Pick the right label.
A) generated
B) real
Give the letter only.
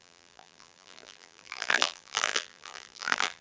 A